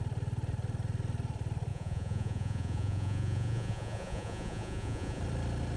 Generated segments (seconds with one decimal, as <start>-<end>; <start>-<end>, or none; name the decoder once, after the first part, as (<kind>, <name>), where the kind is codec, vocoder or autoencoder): 1.7-5.2 (vocoder, Vocos)